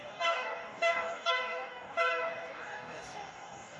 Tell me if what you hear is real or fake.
fake